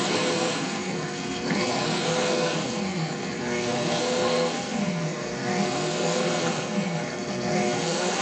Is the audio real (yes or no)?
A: no